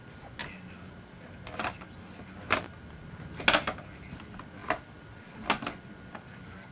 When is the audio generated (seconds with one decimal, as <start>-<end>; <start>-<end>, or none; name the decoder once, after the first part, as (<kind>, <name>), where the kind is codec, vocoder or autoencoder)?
none